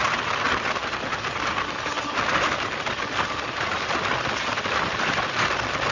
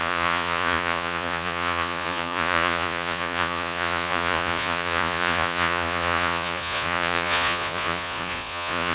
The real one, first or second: first